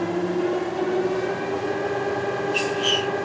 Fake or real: real